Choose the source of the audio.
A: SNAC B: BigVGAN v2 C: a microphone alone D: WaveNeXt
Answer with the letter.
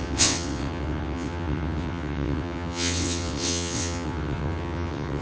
D